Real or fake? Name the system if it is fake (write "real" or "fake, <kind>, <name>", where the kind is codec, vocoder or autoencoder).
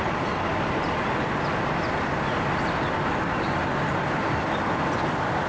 real